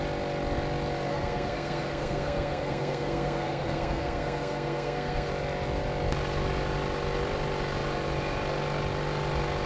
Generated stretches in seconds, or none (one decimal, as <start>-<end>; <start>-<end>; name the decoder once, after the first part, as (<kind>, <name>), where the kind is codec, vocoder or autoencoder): 1.1-5.3 (codec, SNAC)